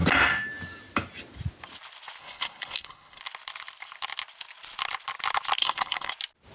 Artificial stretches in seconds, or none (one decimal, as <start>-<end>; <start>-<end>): 2.2-3.2; 5.6-6.1